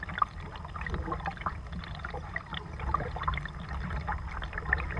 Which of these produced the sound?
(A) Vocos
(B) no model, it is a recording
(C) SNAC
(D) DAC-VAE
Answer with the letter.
B